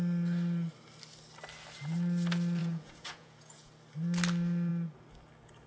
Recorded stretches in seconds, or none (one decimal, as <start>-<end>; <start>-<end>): 0.0-2.6; 3.7-5.7